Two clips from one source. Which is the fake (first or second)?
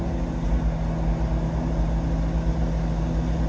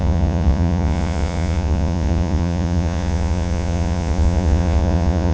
second